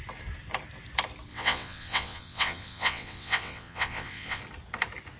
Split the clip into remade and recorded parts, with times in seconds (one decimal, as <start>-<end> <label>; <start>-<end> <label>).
0.0-1.3 recorded; 1.3-4.4 remade; 4.4-5.2 recorded